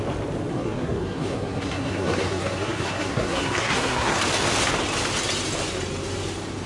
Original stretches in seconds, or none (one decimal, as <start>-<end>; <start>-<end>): 0.0-0.5; 4.2-6.7